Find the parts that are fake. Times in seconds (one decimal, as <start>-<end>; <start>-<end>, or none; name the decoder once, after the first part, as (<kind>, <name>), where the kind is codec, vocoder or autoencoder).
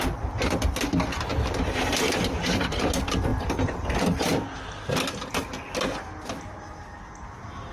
3.3-4.6 (vocoder, BigVGAN v2)